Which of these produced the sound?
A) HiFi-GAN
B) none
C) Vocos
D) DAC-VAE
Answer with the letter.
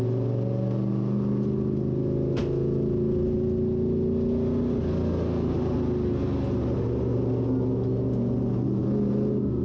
B